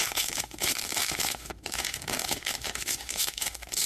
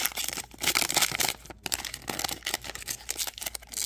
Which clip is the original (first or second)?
second